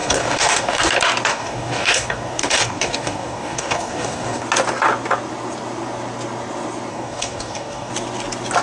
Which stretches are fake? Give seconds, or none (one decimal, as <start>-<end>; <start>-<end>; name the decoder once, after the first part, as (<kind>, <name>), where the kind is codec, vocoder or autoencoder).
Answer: 0.0-0.9 (codec, DAC); 1.3-4.4; 6.9-7.9